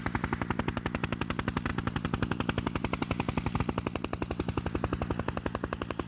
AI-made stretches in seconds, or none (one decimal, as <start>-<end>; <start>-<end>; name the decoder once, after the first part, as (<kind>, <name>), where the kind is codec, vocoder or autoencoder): 1.7-3.6 (vocoder, BigVGAN v2)